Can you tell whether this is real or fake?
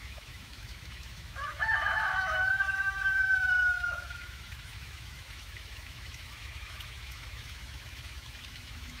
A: fake